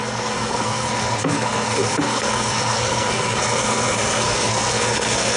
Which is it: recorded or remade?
remade